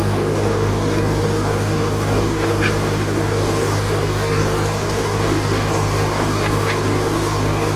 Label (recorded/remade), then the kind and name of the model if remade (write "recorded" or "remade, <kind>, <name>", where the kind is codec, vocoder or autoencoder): remade, codec, DAC